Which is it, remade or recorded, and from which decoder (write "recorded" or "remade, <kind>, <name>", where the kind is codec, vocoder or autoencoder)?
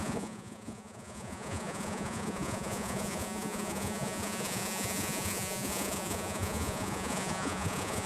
remade, vocoder, Vocos